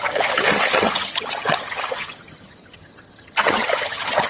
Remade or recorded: remade